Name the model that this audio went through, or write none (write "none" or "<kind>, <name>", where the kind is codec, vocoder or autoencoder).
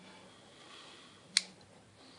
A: none